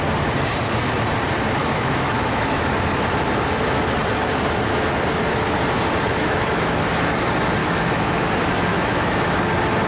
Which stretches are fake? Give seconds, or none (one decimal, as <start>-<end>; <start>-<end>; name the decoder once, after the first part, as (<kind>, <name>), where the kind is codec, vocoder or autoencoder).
1.6-2.7 (autoencoder, DAC-VAE); 6.1-6.8; 7.6-8.2; 8.7-9.2